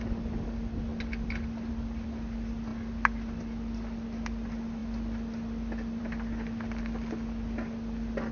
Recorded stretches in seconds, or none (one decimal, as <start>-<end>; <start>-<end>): 0.0-8.3